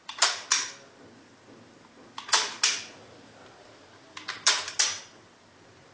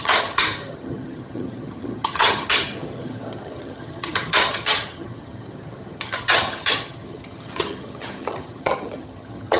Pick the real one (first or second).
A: first